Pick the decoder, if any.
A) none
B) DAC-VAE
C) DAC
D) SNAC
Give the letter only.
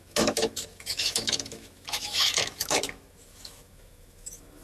B